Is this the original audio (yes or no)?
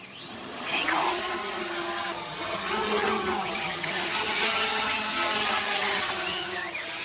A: no